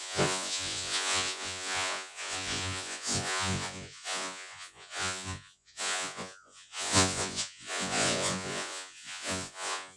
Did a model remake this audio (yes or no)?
yes